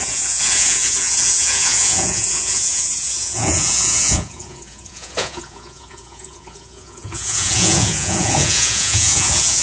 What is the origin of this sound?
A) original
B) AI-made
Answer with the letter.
B